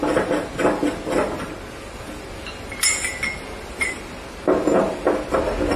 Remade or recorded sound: recorded